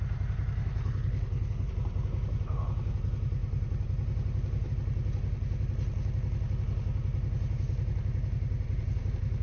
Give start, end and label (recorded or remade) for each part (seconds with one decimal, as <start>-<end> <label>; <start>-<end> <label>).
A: 0.0-0.7 recorded; 0.7-1.7 remade; 1.7-9.4 recorded